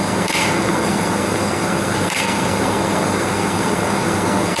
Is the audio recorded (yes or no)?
no